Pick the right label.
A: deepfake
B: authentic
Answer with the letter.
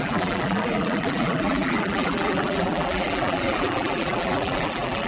A